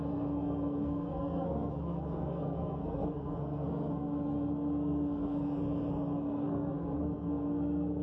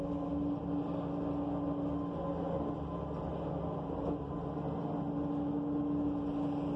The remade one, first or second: first